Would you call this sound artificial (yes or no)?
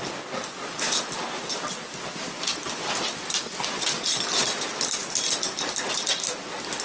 no